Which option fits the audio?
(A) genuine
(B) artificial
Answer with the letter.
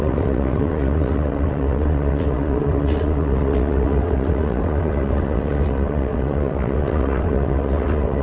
B